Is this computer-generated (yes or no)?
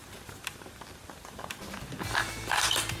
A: no